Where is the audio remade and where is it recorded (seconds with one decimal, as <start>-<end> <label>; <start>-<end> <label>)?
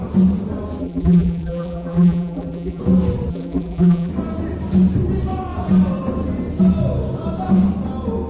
0.0-0.8 recorded; 0.8-2.8 remade; 2.8-3.3 recorded; 3.3-4.1 remade; 4.1-8.3 recorded